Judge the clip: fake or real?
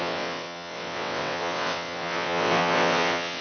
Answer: fake